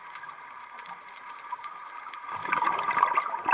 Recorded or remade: recorded